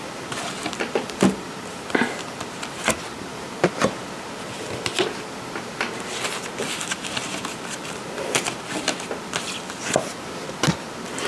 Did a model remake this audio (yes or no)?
no